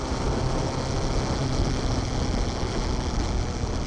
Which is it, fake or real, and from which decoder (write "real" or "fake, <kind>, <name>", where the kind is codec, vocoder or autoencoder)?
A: real